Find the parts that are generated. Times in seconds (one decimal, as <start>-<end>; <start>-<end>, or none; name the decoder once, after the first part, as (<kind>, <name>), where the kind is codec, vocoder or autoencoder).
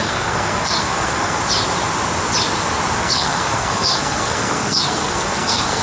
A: 0.0-1.4 (codec, SNAC); 3.0-5.8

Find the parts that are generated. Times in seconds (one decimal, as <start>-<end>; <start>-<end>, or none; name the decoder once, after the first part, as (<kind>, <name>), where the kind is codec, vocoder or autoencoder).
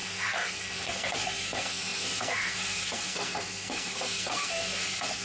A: 0.0-5.2 (codec, SNAC)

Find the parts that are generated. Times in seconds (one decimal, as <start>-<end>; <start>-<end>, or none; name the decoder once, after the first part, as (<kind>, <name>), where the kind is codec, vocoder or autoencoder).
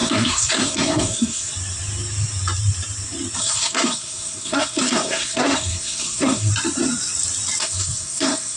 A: 0.0-1.5 (codec, SNAC); 3.4-6.5; 7.6-8.6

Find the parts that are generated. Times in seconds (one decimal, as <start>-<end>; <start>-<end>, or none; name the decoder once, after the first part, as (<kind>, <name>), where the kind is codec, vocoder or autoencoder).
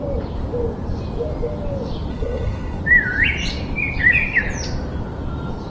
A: 2.1-2.8 (codec, SNAC)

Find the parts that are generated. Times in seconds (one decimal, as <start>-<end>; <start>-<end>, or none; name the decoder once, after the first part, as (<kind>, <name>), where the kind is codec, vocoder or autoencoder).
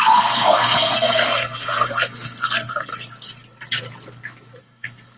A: 0.0-2.9 (codec, SNAC); 4.6-5.2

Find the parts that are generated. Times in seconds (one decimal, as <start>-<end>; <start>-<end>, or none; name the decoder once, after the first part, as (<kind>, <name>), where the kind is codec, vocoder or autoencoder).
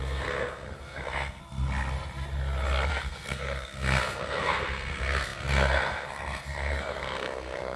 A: 0.0-1.4 (codec, SNAC); 2.9-7.8